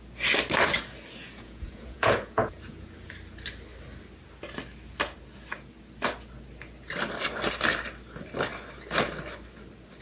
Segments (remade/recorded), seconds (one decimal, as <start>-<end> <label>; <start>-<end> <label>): 0.0-1.2 recorded; 1.2-3.1 remade; 3.1-10.0 recorded